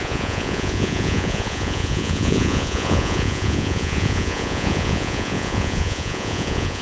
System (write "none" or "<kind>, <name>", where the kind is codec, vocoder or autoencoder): vocoder, Vocos